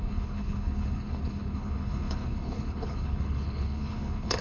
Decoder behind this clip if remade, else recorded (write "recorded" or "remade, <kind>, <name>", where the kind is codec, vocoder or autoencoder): remade, codec, HILCodec